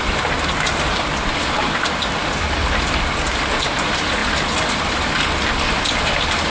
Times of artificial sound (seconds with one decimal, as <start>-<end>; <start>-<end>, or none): none